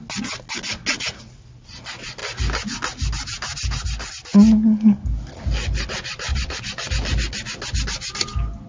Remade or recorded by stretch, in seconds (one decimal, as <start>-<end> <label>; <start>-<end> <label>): 0.0-6.3 recorded; 6.3-6.9 remade; 6.9-8.7 recorded